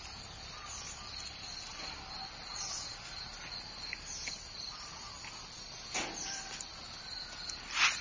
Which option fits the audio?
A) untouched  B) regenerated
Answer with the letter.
A